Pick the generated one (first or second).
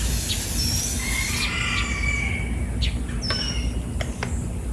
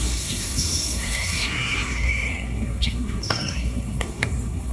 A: second